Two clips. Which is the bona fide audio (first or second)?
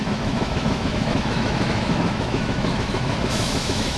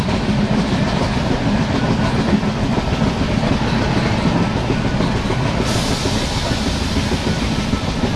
second